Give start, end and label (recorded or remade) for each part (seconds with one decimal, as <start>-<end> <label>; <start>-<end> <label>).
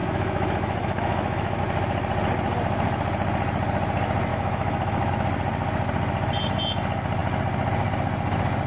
0.0-1.6 remade; 1.6-4.3 recorded; 4.3-5.1 remade; 5.1-8.7 recorded